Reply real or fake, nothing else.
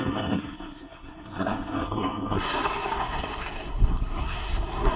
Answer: fake